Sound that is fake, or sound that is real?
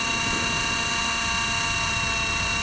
real